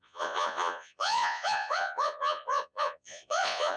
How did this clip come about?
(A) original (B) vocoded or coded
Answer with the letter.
B